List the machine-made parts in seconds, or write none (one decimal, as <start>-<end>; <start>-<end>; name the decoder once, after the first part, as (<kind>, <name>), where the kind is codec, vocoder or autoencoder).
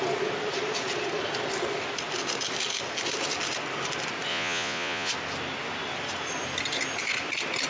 4.3-5.1 (vocoder, Vocos)